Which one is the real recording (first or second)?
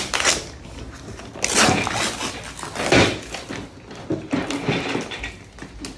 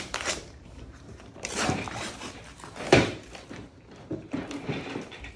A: first